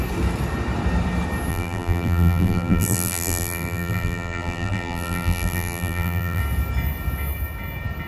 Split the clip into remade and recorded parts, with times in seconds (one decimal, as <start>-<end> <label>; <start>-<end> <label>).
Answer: 0.0-1.5 recorded; 1.5-6.4 remade; 6.4-8.1 recorded

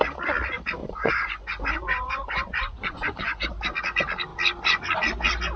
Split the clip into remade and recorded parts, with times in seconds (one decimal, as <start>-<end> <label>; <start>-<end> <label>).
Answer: 0.0-0.8 recorded; 0.8-3.5 remade; 3.5-5.6 recorded

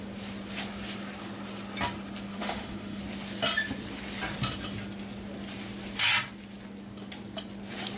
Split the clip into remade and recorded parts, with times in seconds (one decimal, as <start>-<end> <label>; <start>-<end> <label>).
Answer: 0.0-2.3 recorded; 2.3-3.0 remade; 3.0-8.0 recorded